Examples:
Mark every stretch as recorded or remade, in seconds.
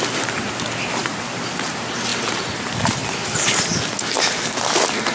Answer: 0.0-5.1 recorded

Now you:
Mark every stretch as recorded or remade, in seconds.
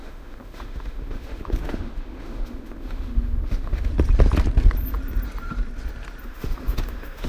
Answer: 0.0-3.9 remade; 3.9-6.2 recorded; 6.2-7.3 remade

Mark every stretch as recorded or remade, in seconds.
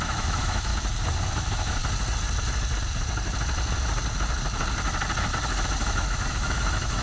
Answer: 0.0-0.7 remade; 0.7-1.2 recorded; 1.2-1.8 remade; 1.8-5.8 recorded; 5.8-7.0 remade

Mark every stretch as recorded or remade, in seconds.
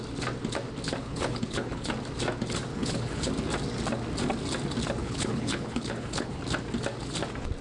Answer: 0.0-1.0 recorded; 1.0-1.9 remade; 1.9-2.7 recorded; 2.7-3.3 remade; 3.3-5.0 recorded; 5.0-6.4 remade; 6.4-7.6 recorded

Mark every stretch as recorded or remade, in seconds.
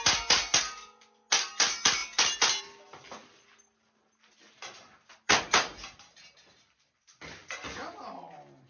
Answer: 0.0-8.7 recorded